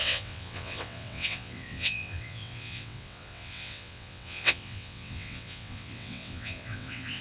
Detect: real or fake fake